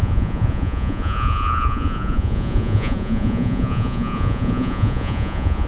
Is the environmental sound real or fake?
fake